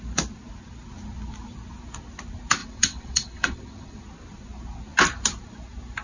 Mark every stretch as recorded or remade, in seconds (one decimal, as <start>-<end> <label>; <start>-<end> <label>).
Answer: 0.0-2.6 recorded; 2.6-4.0 remade; 4.0-6.0 recorded